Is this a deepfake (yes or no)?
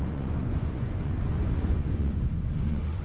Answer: yes